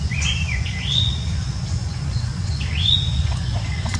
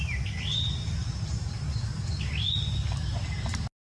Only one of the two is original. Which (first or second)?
second